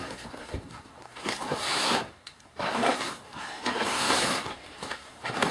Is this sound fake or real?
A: fake